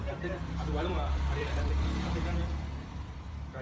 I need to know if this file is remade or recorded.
remade